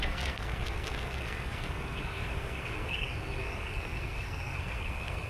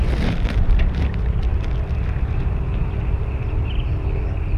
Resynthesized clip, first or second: first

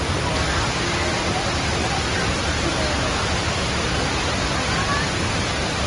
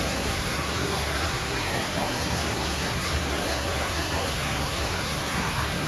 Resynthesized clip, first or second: second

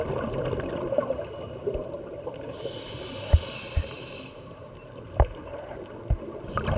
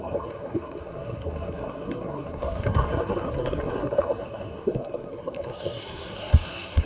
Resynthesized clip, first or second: second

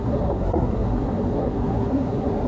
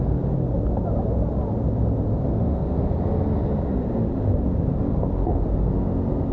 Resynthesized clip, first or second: first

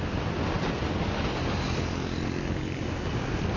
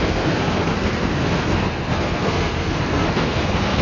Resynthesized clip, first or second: second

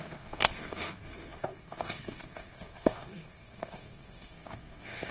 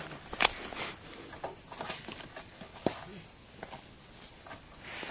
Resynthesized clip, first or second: first